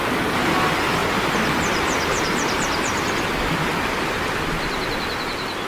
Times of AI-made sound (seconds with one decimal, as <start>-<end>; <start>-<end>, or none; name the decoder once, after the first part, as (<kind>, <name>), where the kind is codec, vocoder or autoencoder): 1.0-4.4 (vocoder, BigVGAN v2)